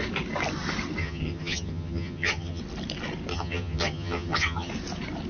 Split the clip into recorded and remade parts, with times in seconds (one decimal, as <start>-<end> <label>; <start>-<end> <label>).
0.0-1.0 recorded; 1.0-2.6 remade; 2.6-3.3 recorded; 3.3-4.7 remade; 4.7-5.3 recorded

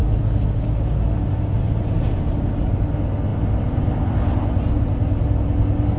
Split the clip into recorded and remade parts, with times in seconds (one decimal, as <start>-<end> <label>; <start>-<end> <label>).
0.0-6.0 recorded